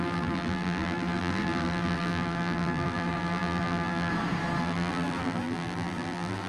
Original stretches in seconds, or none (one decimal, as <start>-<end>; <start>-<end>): 4.1-4.6